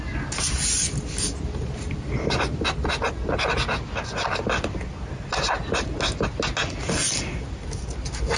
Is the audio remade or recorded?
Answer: recorded